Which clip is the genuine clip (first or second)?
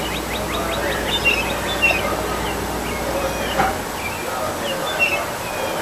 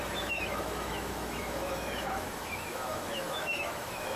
first